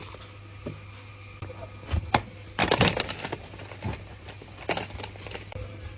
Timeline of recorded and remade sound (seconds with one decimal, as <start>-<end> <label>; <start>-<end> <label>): 0.0-6.0 recorded